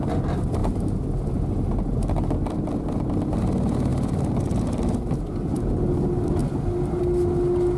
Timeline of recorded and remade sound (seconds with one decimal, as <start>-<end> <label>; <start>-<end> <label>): 0.0-6.4 recorded; 6.4-7.0 remade; 7.0-7.8 recorded